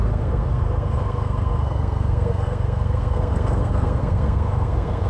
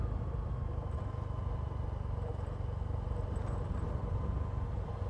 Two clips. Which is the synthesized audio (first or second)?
first